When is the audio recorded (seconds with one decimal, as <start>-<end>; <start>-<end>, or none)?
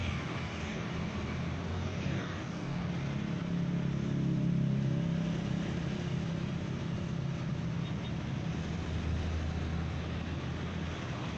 0.9-1.7; 2.9-11.4